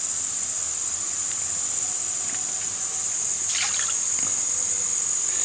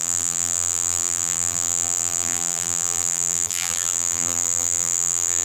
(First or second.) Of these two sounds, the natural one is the first